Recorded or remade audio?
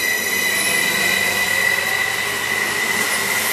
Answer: recorded